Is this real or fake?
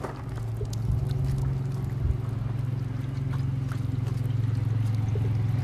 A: real